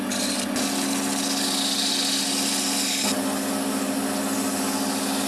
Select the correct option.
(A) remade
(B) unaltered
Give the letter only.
B